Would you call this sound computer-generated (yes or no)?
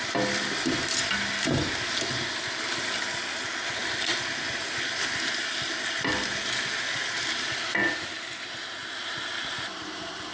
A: no